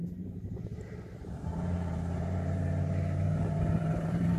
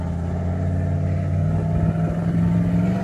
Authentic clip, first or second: second